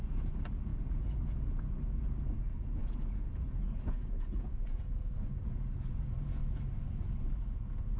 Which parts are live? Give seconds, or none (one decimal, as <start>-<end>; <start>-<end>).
6.4-7.0